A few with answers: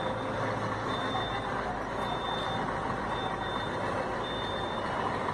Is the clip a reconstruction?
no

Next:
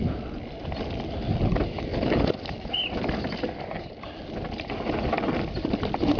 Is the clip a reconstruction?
no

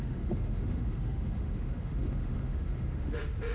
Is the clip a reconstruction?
yes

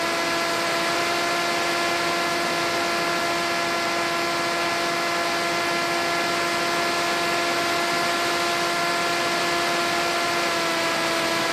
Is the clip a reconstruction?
no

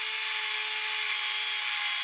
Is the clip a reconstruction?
no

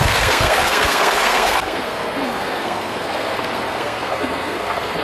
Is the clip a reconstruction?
yes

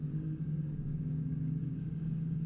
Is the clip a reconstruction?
yes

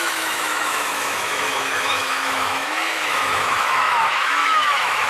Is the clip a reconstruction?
yes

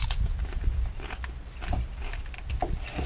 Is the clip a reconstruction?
no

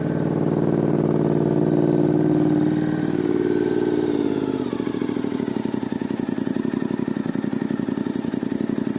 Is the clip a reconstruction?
no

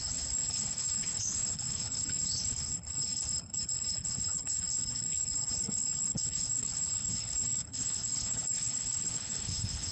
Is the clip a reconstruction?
yes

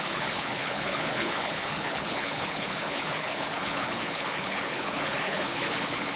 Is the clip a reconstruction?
yes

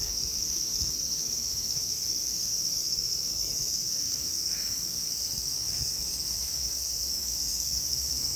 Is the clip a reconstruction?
yes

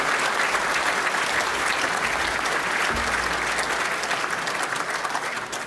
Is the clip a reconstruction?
no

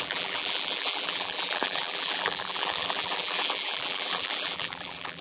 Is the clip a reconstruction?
yes